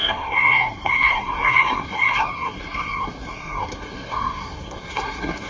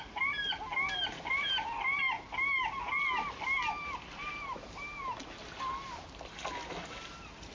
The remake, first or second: first